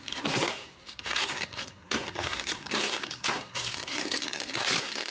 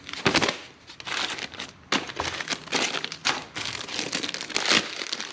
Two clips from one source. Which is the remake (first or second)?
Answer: first